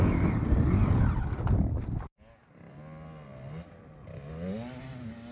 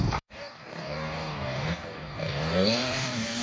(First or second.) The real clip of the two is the first